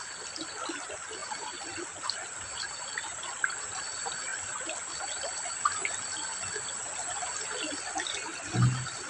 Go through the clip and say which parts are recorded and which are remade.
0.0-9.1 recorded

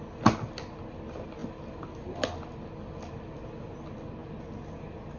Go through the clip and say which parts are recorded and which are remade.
0.0-5.2 recorded

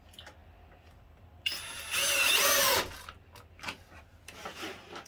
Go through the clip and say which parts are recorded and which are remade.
0.0-5.1 recorded

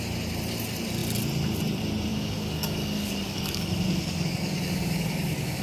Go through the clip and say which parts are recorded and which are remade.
0.0-2.1 recorded; 2.1-5.6 remade